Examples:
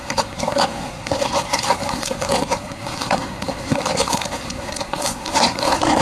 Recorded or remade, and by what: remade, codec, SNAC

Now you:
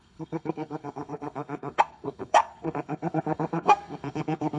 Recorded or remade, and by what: remade, codec, SNAC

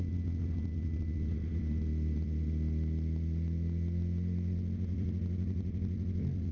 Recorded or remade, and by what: recorded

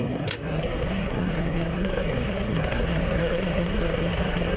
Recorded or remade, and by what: remade, codec, SNAC